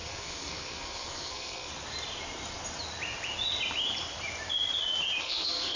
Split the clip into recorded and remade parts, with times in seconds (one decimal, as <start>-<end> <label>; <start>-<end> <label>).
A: 0.0-1.7 remade; 1.7-5.2 recorded; 5.2-5.8 remade